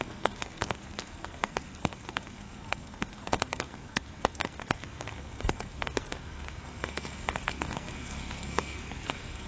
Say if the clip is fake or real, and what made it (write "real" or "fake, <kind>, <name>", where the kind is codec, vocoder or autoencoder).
fake, codec, SNAC